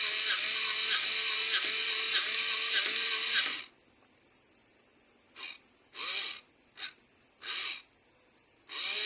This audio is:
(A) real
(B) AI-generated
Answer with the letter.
A